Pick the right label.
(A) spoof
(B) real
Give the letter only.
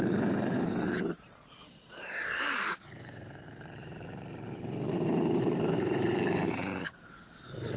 A